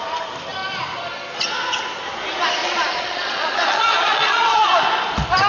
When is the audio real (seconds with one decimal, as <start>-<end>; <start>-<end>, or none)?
0.0-2.6; 4.7-5.5